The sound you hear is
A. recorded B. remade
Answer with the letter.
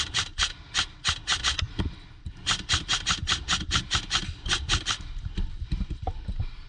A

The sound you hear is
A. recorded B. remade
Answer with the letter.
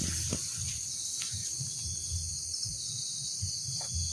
A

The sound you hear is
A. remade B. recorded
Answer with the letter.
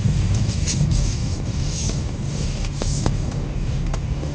A